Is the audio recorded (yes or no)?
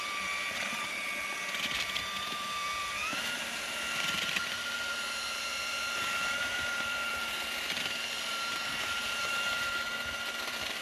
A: no